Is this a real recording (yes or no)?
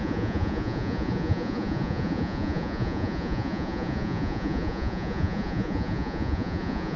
no